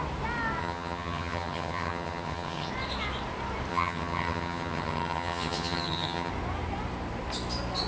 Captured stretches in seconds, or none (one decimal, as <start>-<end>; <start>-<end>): 0.0-0.6; 2.7-3.7; 6.3-7.9